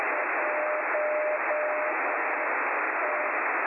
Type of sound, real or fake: real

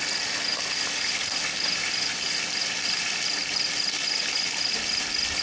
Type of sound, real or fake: real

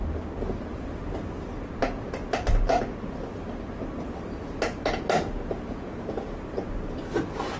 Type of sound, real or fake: real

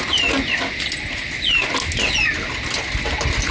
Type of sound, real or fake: real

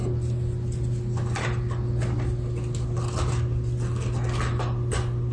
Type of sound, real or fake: real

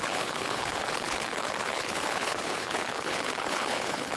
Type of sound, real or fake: fake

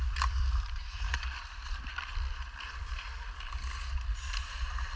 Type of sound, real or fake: real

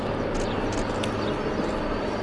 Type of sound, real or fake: real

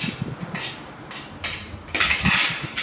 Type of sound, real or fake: real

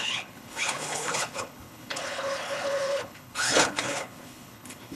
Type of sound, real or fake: fake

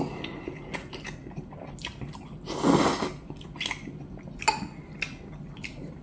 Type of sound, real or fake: real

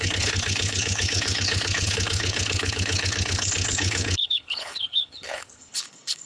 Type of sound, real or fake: fake